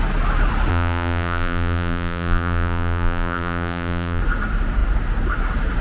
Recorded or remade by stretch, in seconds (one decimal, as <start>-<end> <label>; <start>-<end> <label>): 0.0-0.7 recorded; 0.7-4.2 remade; 4.2-5.8 recorded